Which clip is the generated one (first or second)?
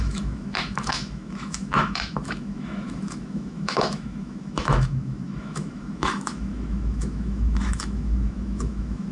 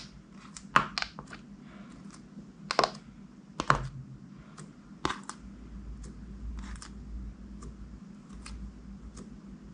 first